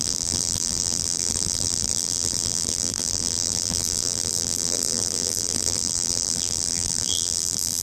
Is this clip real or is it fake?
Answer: fake